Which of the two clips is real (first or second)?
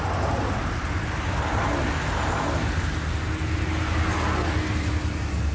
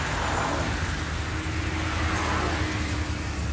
second